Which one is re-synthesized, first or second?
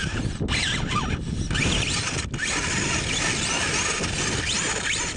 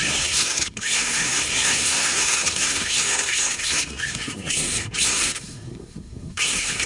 second